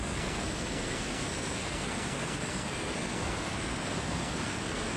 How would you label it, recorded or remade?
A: remade